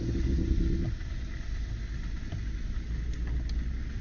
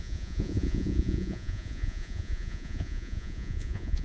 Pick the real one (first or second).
first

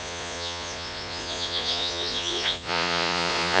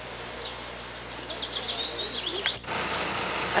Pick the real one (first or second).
second